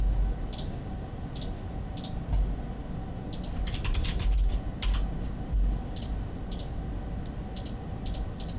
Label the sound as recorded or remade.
recorded